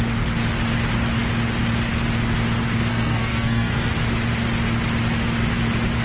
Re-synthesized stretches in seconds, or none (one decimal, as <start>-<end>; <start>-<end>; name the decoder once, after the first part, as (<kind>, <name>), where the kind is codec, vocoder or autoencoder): 2.9-3.9 (codec, SNAC)